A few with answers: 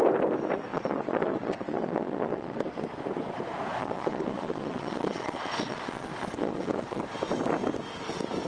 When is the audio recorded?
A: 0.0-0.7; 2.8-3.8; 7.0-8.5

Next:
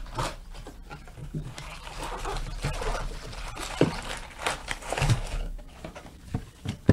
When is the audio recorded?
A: 0.0-1.2; 1.8-4.6

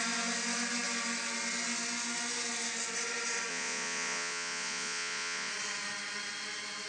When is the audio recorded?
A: 0.0-3.5; 5.5-6.9

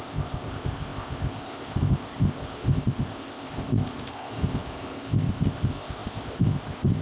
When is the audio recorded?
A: none

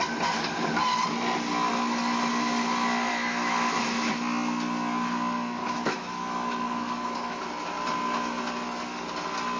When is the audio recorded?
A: 0.0-3.1; 4.1-5.6; 7.4-9.6

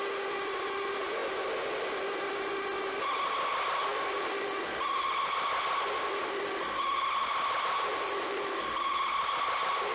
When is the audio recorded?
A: 0.0-9.9

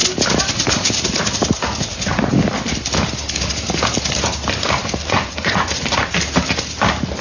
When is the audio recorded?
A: 0.0-4.8; 5.9-7.2